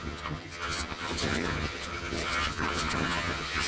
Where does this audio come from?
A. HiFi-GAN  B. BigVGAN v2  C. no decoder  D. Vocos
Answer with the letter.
A